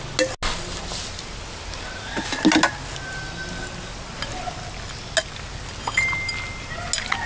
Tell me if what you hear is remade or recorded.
recorded